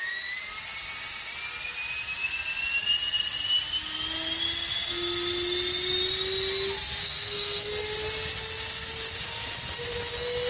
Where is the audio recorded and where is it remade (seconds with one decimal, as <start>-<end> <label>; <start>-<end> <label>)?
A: 0.0-7.0 recorded; 7.0-7.7 remade; 7.7-10.5 recorded